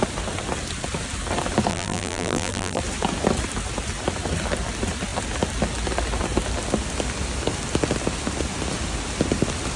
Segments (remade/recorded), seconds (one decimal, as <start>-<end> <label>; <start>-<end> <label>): 0.0-1.7 recorded; 1.7-2.8 remade; 2.8-9.8 recorded